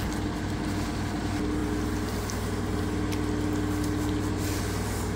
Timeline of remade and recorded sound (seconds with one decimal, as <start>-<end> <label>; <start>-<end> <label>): 0.0-5.2 recorded